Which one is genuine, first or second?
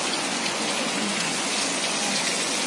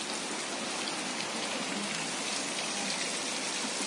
second